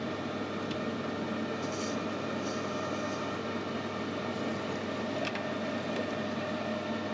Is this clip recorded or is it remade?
recorded